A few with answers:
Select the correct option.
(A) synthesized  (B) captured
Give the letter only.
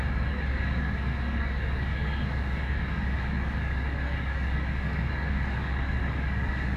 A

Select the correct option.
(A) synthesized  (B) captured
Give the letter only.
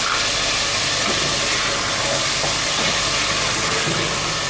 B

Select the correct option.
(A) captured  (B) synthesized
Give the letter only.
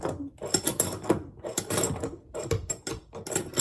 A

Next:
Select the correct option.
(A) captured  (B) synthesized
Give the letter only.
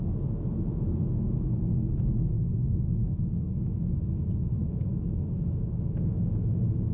B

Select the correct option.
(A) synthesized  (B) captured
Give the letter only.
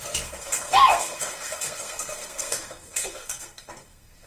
A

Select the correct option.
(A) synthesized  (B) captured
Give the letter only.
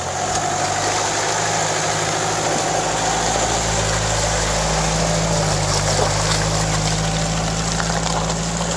B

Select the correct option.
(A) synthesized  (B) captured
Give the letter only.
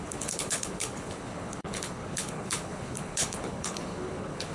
A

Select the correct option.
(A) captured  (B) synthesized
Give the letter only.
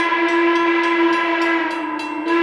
A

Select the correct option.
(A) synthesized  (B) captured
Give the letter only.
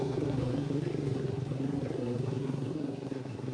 A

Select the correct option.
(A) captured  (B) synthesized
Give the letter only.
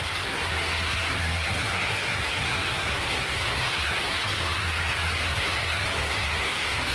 B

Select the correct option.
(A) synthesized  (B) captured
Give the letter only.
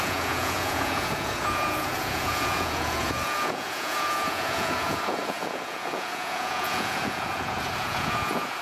A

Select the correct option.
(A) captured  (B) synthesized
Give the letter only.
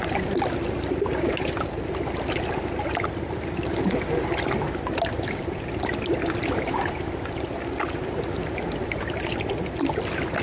A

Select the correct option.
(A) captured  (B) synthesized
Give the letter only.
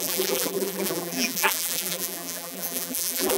B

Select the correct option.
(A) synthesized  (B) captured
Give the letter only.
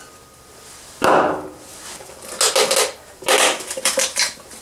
B